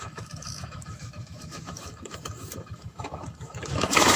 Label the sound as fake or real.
fake